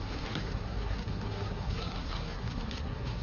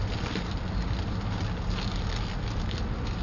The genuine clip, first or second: second